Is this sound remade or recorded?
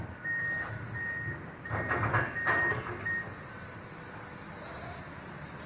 recorded